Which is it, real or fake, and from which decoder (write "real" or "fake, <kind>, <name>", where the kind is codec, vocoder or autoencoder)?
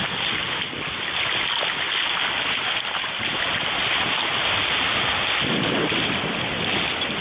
real